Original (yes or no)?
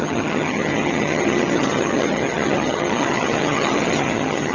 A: no